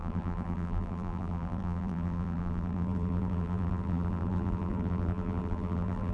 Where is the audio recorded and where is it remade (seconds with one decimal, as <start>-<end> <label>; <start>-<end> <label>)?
0.0-6.1 remade